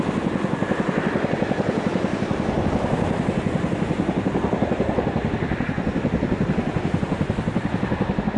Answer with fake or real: real